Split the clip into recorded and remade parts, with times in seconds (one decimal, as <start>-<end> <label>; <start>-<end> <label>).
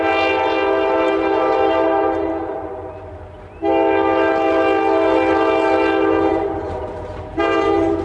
0.0-6.3 recorded; 6.3-8.0 remade